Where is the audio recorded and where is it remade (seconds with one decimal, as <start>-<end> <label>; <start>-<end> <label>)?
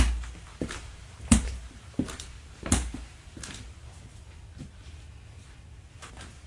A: 0.0-0.5 recorded; 0.5-4.4 remade; 4.4-6.5 recorded